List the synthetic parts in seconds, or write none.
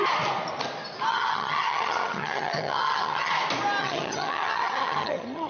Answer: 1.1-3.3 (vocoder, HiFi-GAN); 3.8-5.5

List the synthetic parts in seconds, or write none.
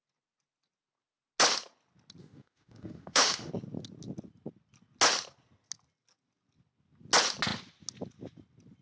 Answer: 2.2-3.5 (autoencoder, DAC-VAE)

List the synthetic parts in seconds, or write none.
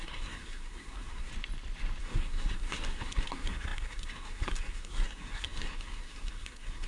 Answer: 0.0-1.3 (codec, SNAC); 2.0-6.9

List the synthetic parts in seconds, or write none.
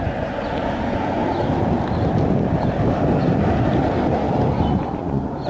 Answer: 0.0-1.2 (vocoder, Vocos); 4.5-5.5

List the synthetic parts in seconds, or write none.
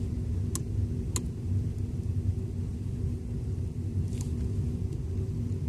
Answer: 2.7-4.8 (vocoder, BigVGAN v2)